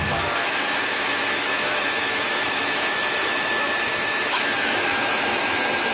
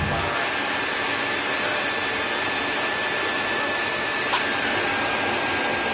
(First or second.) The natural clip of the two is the second